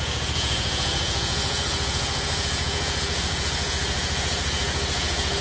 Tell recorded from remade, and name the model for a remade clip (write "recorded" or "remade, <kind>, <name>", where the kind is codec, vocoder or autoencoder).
remade, vocoder, Vocos